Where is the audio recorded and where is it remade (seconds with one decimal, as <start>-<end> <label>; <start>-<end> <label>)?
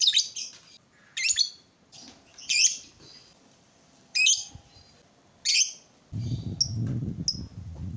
0.0-2.3 recorded; 2.3-4.5 remade; 4.5-8.0 recorded